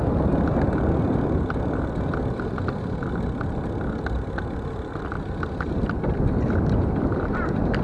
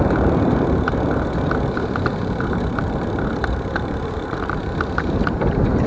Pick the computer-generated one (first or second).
second